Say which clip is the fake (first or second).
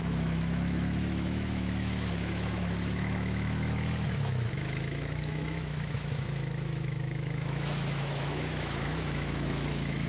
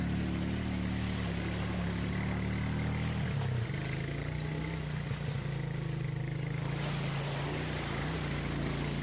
first